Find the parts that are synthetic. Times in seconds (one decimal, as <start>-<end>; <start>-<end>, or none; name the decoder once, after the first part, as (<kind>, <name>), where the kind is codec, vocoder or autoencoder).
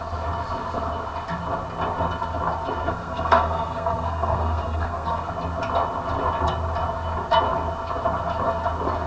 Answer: 2.8-5.3 (codec, SNAC)